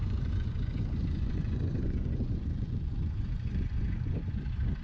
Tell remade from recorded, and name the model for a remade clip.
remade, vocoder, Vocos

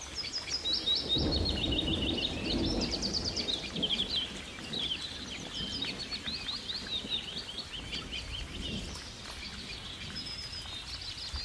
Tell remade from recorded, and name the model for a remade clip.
recorded